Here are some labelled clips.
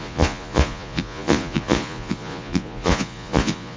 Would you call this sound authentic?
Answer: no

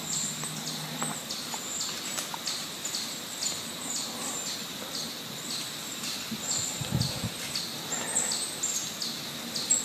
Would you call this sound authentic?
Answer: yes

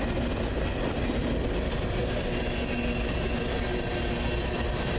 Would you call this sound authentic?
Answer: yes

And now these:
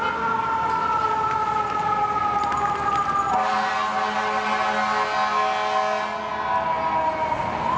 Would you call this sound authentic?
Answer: yes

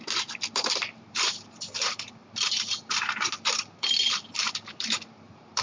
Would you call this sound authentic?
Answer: no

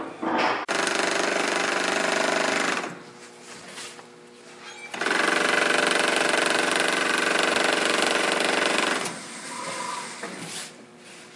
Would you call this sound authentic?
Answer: yes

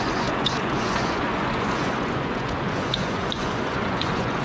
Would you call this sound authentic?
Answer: no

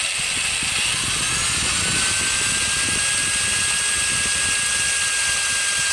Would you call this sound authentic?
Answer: yes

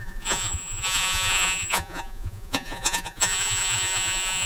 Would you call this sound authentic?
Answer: no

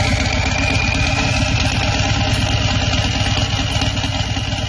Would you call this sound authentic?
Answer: yes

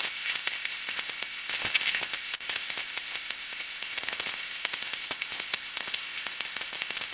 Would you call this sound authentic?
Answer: no